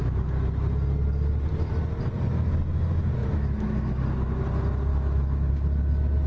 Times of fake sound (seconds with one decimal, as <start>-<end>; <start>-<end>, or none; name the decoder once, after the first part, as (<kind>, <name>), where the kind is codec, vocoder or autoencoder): 3.2-4.0 (autoencoder, DAC-VAE); 4.9-5.5